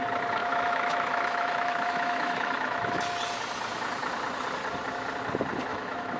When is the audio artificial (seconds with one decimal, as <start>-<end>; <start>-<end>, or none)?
0.4-3.0; 5.7-6.2